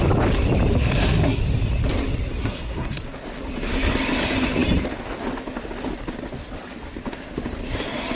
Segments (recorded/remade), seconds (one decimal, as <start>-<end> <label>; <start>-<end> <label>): 0.0-0.7 recorded; 0.7-1.4 remade; 1.4-2.4 recorded; 2.4-3.0 remade; 3.0-8.2 recorded